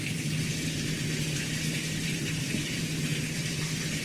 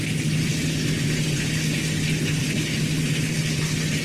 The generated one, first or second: first